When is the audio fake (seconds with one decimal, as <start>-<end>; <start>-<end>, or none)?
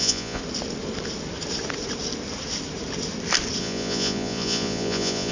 0.0-0.4; 3.6-5.3